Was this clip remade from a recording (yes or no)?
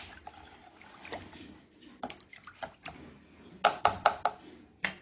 no